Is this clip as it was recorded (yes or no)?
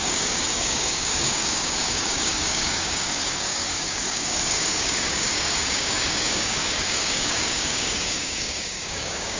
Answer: no